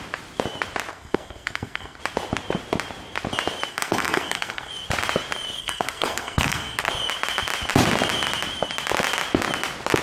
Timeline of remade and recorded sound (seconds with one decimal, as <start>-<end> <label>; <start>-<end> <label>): 0.0-0.9 recorded; 0.9-2.0 remade; 2.0-3.7 recorded; 3.7-4.7 remade; 4.7-5.6 recorded; 5.6-6.9 remade; 6.9-10.0 recorded